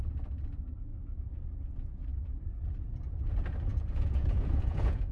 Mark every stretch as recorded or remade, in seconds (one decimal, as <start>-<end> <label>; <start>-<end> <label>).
0.0-3.7 recorded; 3.7-5.1 remade